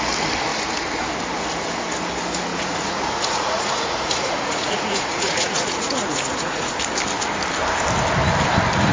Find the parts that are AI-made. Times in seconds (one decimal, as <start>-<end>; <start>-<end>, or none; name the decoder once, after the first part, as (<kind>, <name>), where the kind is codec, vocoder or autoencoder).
2.5-6.7 (vocoder, Vocos)